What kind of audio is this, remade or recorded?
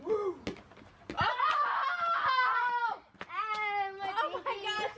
recorded